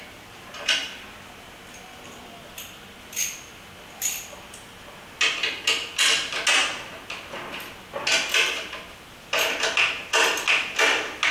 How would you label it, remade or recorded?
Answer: recorded